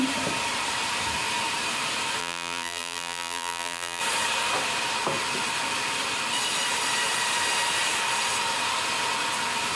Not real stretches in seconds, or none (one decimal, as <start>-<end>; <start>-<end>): 2.2-4.0